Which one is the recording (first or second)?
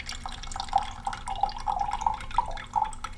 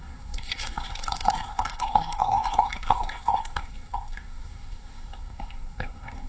first